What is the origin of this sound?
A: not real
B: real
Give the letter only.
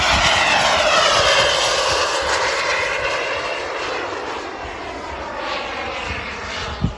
B